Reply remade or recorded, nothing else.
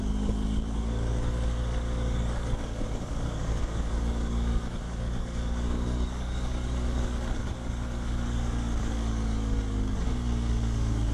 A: remade